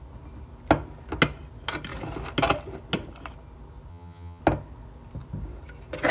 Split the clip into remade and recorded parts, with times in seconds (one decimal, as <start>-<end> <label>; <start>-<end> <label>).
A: 0.0-3.9 recorded; 3.9-4.4 remade; 4.4-6.1 recorded